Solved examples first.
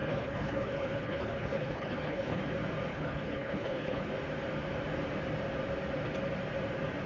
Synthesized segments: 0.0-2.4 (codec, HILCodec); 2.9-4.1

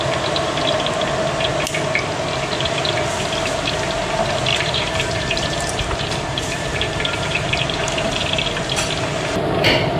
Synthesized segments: 4.5-8.3 (vocoder, BigVGAN v2)